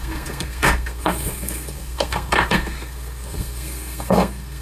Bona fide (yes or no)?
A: no